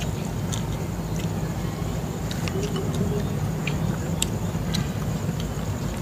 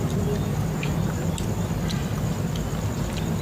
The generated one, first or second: first